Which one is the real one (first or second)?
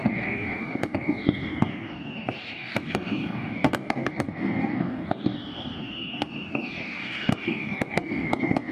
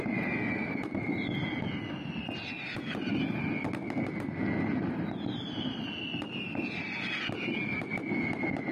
second